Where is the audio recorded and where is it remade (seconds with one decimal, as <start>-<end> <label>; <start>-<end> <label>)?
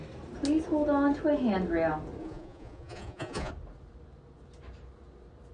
0.0-2.2 recorded; 2.2-3.5 remade; 3.5-5.5 recorded